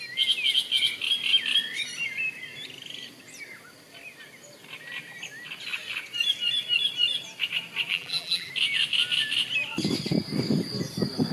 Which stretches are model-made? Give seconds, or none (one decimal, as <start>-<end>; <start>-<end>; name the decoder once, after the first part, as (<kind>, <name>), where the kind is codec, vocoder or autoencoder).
7.9-8.5 (vocoder, BigVGAN v2)